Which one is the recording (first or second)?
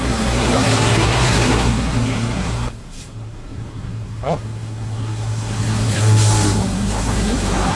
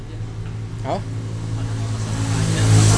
second